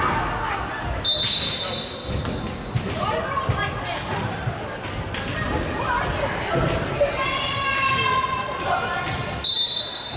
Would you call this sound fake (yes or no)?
no